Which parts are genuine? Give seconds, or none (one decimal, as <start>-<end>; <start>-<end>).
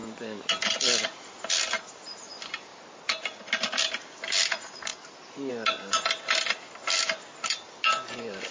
0.0-8.5